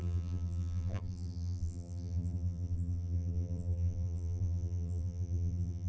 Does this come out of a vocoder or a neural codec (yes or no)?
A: yes